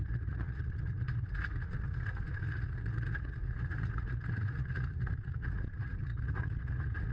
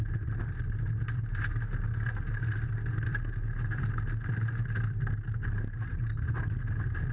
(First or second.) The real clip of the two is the second